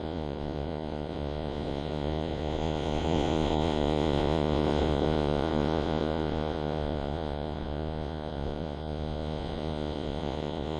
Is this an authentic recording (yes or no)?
no